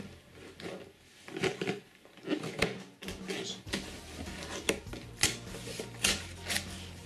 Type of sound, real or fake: real